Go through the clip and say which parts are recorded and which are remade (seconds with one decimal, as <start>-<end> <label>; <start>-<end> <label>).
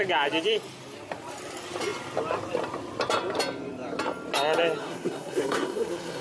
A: 0.0-4.8 recorded; 4.8-6.2 remade